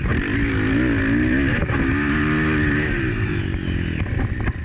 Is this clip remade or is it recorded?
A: recorded